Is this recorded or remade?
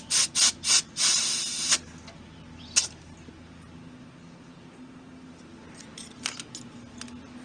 recorded